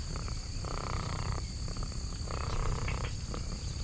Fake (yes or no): no